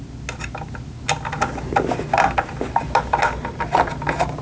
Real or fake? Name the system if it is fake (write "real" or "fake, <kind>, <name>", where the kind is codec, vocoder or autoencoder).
real